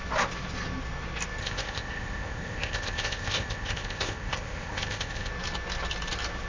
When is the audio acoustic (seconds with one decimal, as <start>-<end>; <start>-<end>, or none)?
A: 0.0-1.4; 5.3-6.5